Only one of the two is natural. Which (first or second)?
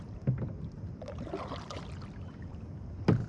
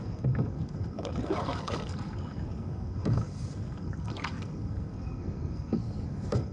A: first